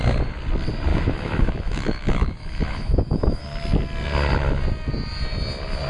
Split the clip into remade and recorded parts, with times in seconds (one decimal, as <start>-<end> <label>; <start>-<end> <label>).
0.0-0.9 recorded; 0.9-3.4 remade; 3.4-5.9 recorded